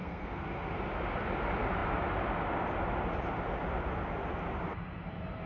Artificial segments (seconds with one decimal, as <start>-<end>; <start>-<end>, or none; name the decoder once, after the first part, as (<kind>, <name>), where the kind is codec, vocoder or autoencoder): 0.0-0.9 (codec, SNAC)